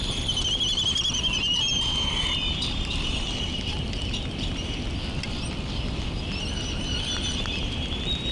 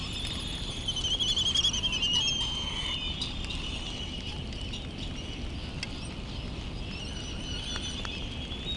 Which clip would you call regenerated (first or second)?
first